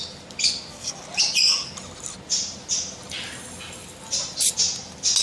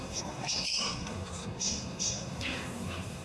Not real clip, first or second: second